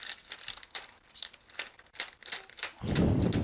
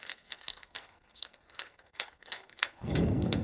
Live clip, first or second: first